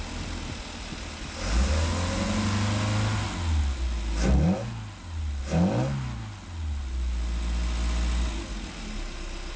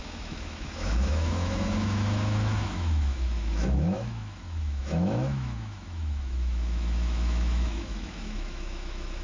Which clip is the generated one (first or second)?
second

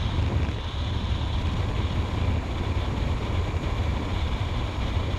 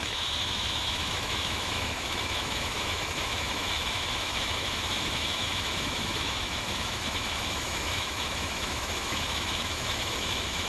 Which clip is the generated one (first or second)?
second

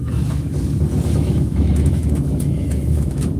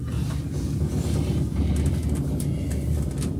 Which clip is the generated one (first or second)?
first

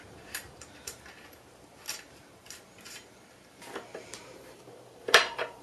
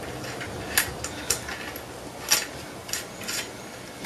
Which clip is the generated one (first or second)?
first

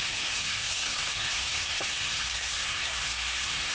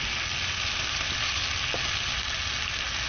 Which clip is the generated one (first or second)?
first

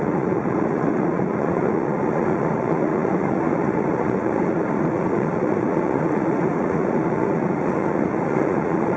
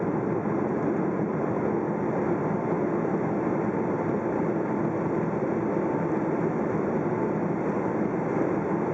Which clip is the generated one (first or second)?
first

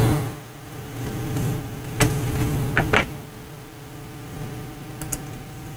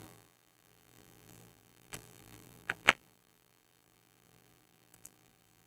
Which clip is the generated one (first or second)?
second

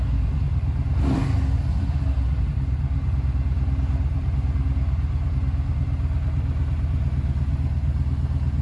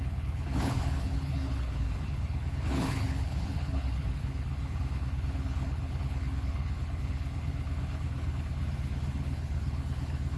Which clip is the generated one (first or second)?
second